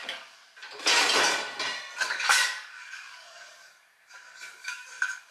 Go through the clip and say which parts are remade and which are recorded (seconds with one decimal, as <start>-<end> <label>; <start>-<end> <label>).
0.0-0.4 remade; 0.4-2.0 recorded; 2.0-5.3 remade

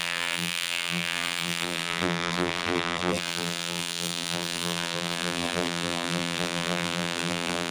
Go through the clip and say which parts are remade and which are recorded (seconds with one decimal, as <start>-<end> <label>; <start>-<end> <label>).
0.0-7.7 remade